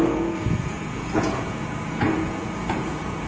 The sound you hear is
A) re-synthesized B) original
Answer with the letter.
A